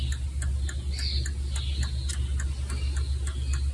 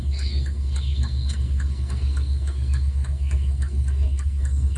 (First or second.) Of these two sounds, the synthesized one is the second